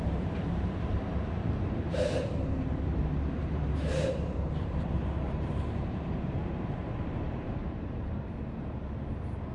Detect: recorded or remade remade